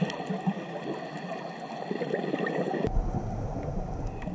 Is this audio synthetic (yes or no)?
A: no